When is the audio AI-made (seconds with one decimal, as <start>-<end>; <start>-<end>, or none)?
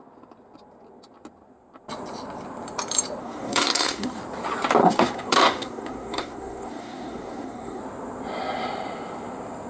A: 3.2-4.2; 4.8-7.8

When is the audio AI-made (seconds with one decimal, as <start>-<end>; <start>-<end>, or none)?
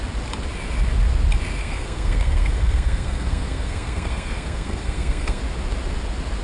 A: 1.6-5.4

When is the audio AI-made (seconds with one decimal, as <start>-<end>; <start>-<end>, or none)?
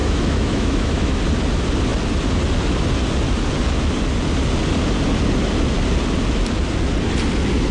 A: 0.0-1.2